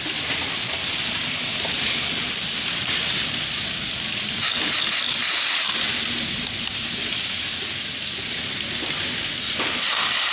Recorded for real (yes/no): no